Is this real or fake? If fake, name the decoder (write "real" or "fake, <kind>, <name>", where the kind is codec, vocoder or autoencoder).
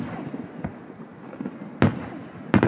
real